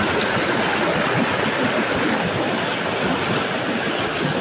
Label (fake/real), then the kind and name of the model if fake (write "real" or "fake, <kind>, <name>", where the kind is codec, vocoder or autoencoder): real